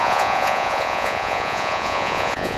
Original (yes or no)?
no